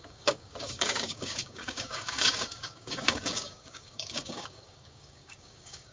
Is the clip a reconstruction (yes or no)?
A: yes